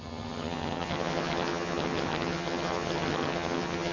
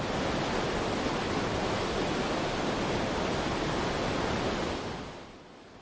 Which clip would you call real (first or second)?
second